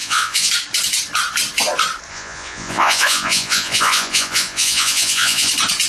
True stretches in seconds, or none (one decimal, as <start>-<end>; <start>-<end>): 0.5-2.1; 5.5-5.9